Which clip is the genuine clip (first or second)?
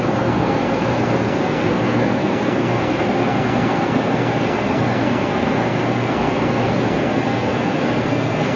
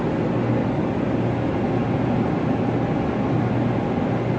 second